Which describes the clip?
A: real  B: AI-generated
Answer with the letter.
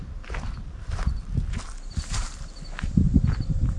A